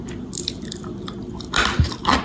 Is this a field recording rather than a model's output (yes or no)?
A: yes